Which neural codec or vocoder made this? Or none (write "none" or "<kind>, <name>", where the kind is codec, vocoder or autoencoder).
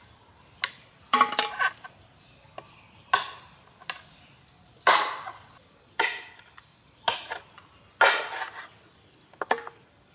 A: none